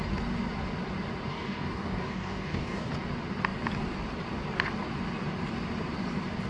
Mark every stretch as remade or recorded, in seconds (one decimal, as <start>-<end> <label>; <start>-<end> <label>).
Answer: 0.0-1.3 recorded; 1.3-2.9 remade; 2.9-6.5 recorded